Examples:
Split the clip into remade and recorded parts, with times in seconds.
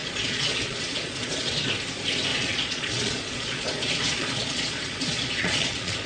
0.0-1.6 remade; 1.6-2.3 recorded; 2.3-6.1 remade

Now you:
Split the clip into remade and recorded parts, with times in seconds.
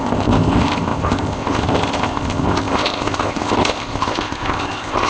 0.0-5.1 remade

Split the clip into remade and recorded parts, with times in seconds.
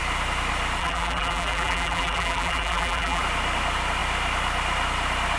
0.0-0.8 recorded; 0.8-3.2 remade; 3.2-5.4 recorded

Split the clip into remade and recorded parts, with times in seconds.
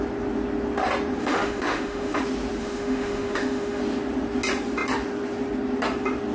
0.0-1.2 recorded; 1.2-2.2 remade; 2.2-2.6 recorded; 2.6-3.8 remade; 3.8-6.3 recorded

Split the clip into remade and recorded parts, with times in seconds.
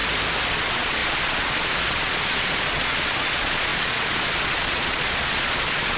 0.0-0.5 recorded; 0.5-6.0 remade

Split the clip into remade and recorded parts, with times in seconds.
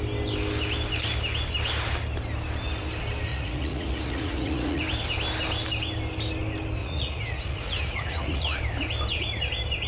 0.0-3.3 recorded; 3.3-4.8 remade; 4.8-6.8 recorded; 6.8-8.6 remade; 8.6-9.9 recorded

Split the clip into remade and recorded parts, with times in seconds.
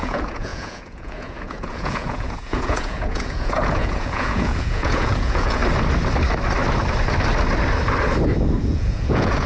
0.0-5.6 remade; 5.6-8.6 recorded; 8.6-9.5 remade